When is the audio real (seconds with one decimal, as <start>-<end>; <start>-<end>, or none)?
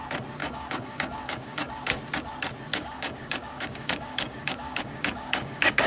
0.0-0.4; 2.0-2.7